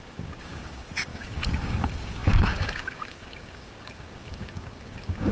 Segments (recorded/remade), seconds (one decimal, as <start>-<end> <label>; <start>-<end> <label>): 0.0-5.3 remade